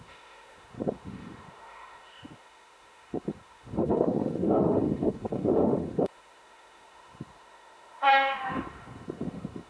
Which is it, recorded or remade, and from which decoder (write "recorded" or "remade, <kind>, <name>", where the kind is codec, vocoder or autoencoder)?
remade, autoencoder, DAC-VAE